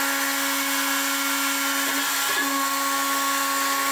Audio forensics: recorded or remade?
recorded